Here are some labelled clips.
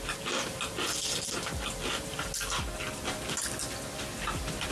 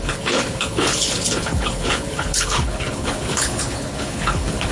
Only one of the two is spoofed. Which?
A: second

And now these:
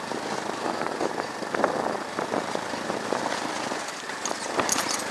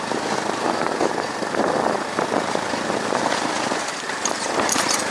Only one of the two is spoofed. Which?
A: second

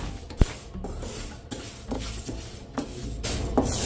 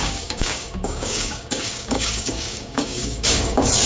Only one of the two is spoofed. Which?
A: second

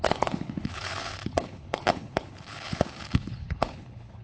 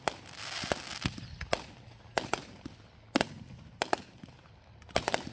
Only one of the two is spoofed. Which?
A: first